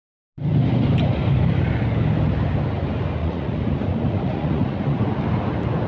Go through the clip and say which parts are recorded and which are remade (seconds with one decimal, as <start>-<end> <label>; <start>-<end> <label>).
0.0-3.2 recorded; 3.2-5.0 remade; 5.0-5.9 recorded